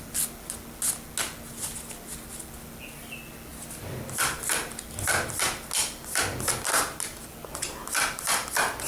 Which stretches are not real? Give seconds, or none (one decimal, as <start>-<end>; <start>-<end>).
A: 3.5-4.4; 7.8-8.3